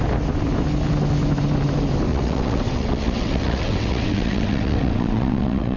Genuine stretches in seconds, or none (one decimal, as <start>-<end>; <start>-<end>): 0.0-2.1